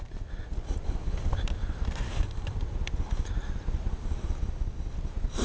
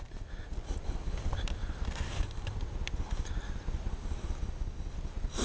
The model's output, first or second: first